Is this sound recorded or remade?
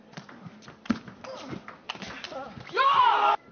remade